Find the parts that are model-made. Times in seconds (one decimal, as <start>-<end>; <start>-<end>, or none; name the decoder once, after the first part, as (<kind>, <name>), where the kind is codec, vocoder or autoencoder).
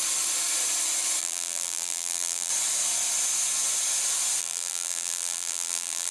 1.2-2.5 (vocoder, BigVGAN v2); 4.4-6.1